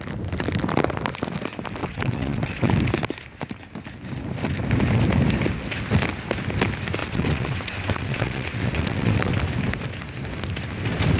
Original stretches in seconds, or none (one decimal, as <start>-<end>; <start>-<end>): 0.0-1.8; 2.7-7.0; 9.3-11.2